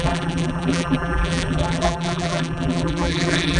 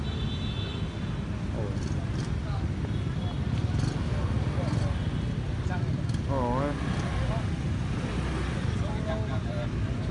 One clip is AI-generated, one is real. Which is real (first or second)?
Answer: second